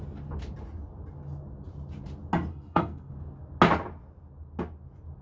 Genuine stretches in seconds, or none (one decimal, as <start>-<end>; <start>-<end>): 0.0-2.5; 3.1-5.2